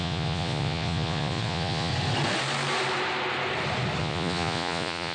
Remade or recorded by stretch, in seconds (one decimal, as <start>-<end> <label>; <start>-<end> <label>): 0.0-1.9 remade; 1.9-4.0 recorded; 4.0-5.1 remade